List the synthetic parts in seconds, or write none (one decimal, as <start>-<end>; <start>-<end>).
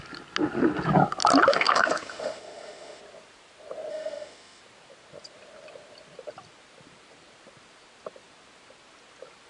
1.5-3.0; 3.9-4.6